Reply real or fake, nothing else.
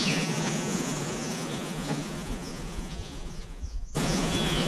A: fake